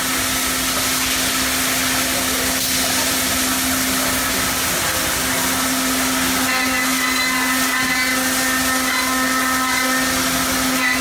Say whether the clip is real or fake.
real